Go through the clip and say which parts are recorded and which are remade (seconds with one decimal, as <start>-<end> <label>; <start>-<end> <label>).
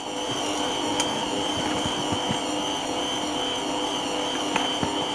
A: 0.0-1.2 recorded; 1.2-1.9 remade; 1.9-5.1 recorded